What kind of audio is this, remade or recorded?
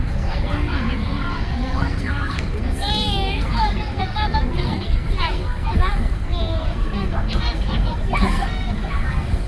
remade